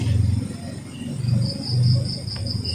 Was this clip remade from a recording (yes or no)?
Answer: no